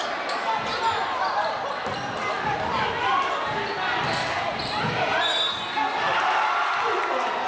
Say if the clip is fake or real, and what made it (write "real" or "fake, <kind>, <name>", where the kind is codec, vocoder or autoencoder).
real